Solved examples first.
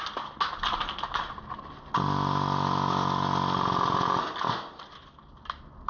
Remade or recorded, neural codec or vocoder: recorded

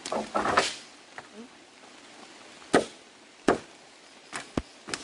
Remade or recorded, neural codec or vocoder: recorded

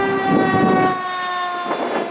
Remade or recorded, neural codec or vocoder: recorded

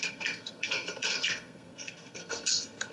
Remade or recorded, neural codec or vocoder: remade, codec, SNAC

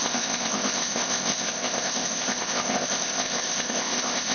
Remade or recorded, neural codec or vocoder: remade, codec, ZipCodec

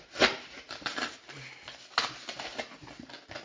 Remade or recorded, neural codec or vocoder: recorded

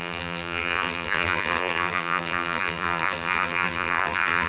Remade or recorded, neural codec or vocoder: remade, vocoder, BigVGAN v2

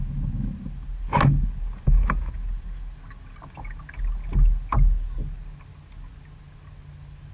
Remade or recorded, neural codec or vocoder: recorded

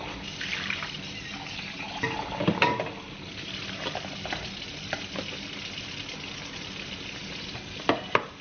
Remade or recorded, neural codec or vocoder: remade, vocoder, BigVGAN v2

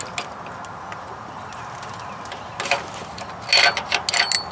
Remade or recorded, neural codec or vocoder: recorded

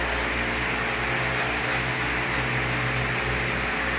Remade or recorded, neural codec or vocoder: recorded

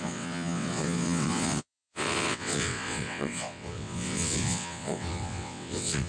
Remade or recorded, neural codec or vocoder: remade, vocoder, WaveNeXt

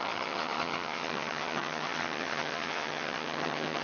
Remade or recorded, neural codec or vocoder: remade, vocoder, HiFi-GAN